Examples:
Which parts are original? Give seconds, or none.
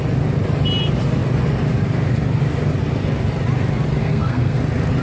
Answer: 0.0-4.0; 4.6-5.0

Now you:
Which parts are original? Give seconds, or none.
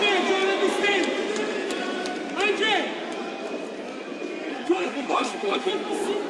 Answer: 0.0-4.5; 5.7-6.3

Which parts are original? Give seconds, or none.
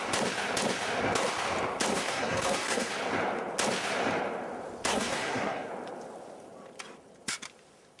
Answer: 0.0-1.9; 2.9-4.9; 5.7-8.0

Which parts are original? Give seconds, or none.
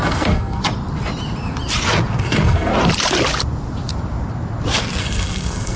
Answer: 0.6-2.2; 2.7-5.0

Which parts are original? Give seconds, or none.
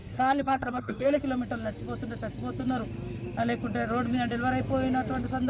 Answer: 1.2-5.5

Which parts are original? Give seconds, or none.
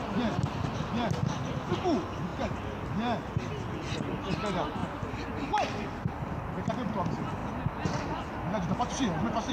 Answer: 0.0-9.5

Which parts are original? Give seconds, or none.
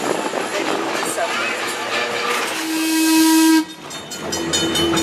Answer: 0.0-5.0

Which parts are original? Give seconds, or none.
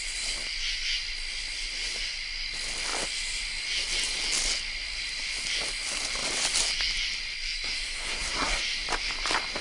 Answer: 0.0-8.1; 8.6-9.6